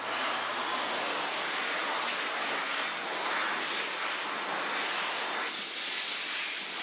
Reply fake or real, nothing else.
real